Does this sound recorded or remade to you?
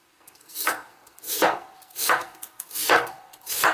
remade